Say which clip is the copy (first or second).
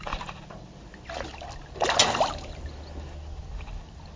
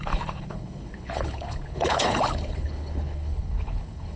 second